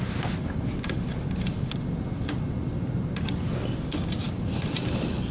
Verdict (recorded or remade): recorded